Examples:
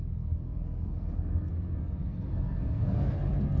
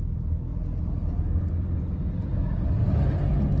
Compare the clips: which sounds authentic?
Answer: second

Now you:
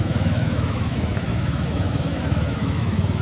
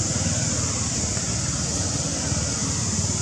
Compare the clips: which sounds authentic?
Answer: second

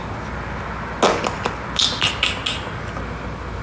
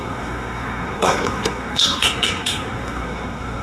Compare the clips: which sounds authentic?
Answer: first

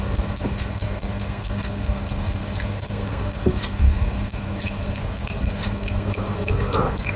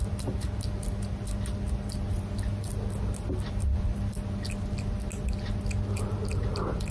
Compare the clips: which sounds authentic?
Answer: second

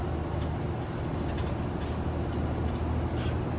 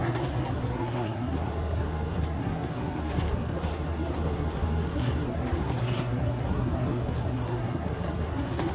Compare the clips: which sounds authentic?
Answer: first